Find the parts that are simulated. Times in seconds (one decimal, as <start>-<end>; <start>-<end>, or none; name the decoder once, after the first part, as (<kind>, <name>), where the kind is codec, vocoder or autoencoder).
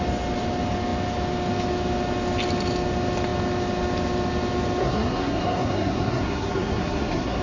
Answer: 4.8-7.4 (codec, SNAC)